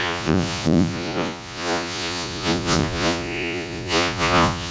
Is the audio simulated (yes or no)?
yes